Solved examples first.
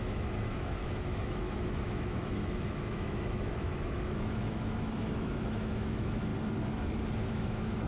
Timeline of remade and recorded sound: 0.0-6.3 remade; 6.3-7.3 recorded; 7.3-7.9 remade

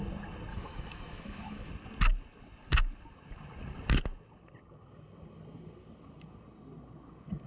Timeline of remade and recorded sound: 0.0-0.5 recorded; 0.5-1.7 remade; 1.7-7.5 recorded

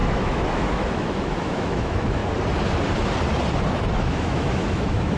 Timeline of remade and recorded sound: 0.0-2.2 remade; 2.2-4.0 recorded; 4.0-5.2 remade